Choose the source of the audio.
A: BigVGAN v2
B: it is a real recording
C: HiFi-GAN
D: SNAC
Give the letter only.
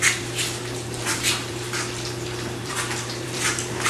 A